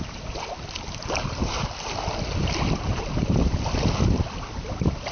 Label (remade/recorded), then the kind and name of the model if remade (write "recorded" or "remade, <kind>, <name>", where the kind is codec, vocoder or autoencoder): recorded